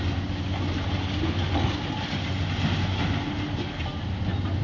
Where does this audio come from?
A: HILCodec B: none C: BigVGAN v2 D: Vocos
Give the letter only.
B